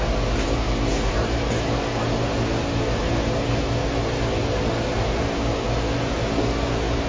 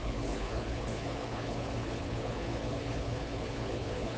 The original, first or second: first